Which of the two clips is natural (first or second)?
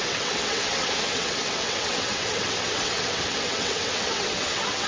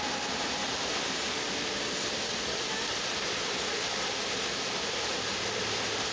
second